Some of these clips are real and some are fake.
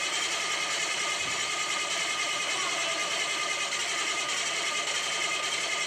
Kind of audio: real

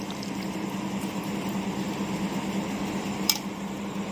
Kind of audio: real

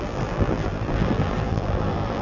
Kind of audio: fake